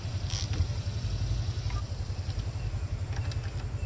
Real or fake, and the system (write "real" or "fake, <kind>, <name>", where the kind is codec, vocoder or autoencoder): real